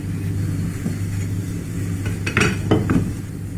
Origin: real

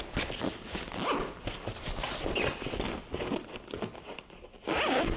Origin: real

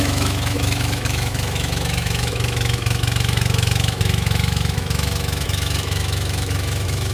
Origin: fake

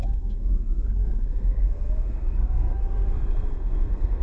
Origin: fake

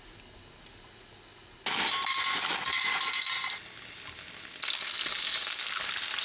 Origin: real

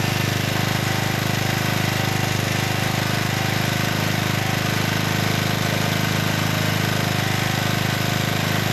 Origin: real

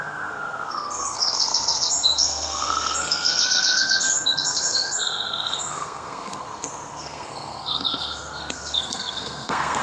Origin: fake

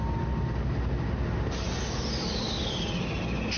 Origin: real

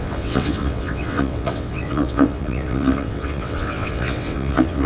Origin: fake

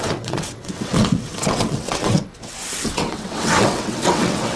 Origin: fake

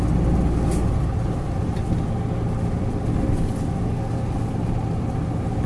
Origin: real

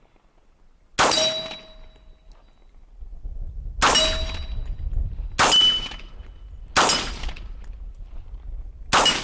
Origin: real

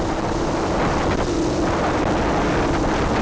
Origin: real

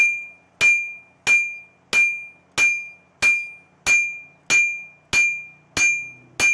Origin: real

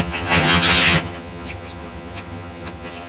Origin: fake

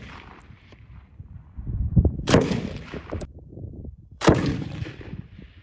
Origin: fake